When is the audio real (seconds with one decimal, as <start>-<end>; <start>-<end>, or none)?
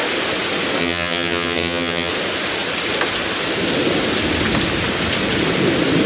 0.0-0.8; 2.1-6.1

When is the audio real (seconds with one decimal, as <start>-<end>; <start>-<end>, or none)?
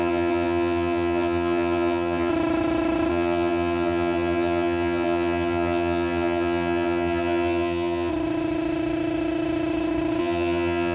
2.3-3.1; 8.1-10.2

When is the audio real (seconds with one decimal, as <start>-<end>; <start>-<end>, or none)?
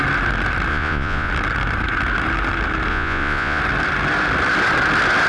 0.0-0.7; 1.3-2.9; 3.6-5.3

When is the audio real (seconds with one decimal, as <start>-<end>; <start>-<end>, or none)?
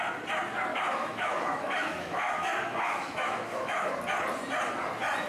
0.0-0.7; 3.9-5.3